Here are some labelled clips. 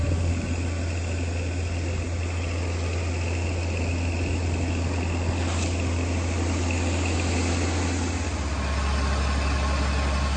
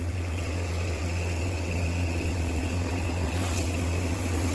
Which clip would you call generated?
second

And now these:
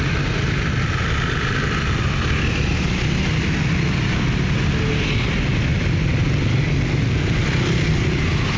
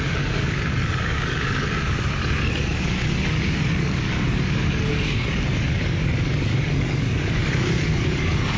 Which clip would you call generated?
second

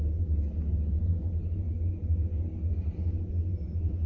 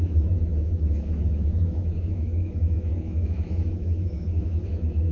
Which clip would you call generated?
second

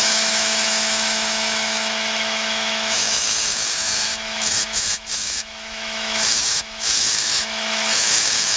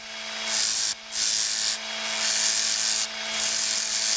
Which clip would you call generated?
first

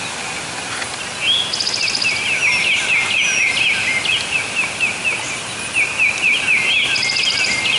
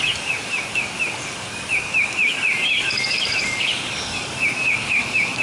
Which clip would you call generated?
second